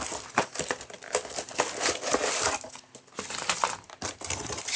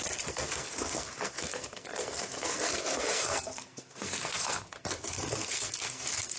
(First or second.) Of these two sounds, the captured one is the first